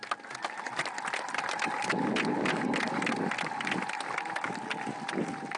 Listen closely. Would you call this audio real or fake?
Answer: real